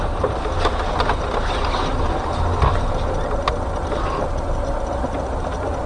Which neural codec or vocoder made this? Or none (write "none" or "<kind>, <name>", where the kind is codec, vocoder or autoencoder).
none